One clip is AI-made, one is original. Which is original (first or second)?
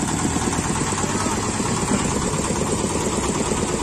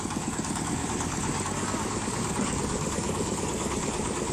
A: first